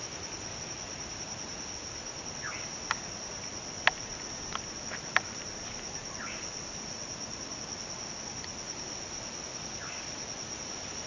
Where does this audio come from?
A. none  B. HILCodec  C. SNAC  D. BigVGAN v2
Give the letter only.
A